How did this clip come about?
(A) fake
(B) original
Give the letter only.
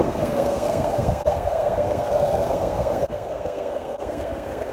A